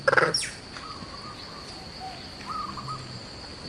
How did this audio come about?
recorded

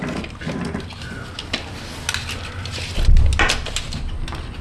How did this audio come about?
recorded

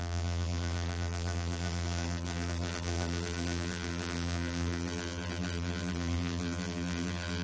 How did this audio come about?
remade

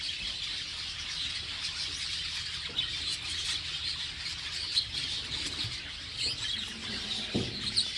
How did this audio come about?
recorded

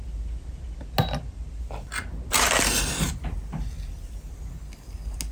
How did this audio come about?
recorded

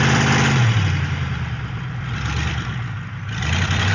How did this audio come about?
remade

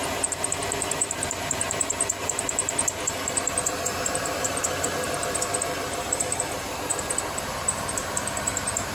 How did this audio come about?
remade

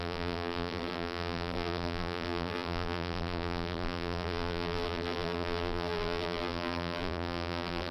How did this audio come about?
remade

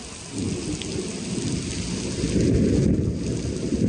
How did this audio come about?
recorded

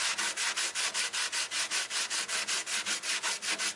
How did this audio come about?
recorded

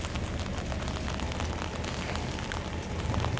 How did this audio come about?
recorded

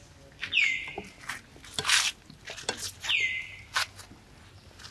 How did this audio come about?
recorded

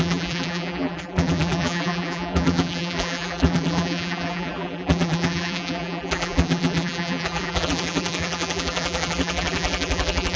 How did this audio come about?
remade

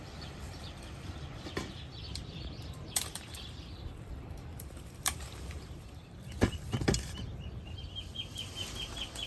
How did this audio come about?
remade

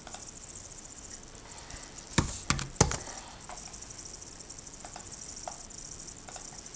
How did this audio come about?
recorded